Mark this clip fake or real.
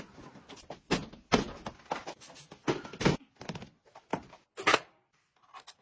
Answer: real